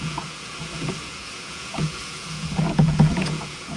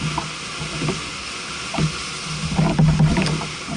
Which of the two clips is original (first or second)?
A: second